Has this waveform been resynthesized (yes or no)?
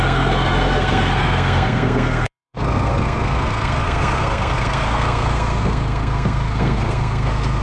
yes